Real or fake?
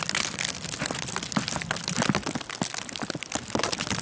real